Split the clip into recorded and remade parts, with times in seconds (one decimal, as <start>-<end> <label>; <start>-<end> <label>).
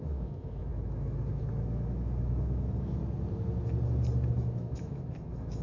0.0-3.0 remade; 3.0-4.3 recorded; 4.3-5.6 remade